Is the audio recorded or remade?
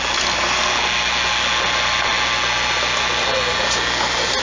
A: recorded